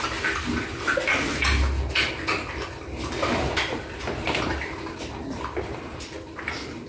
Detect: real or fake real